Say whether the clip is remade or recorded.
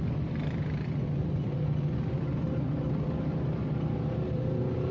remade